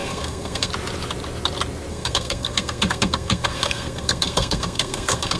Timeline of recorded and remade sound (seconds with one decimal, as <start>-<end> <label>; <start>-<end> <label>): 0.0-0.7 remade; 0.7-1.9 recorded; 1.9-5.4 remade